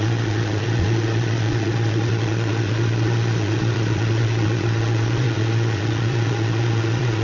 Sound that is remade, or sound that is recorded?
remade